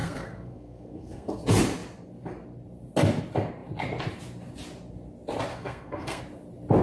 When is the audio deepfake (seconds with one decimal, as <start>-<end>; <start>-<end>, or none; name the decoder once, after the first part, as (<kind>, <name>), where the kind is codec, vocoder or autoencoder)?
0.0-1.4 (codec, SNAC); 5.5-6.2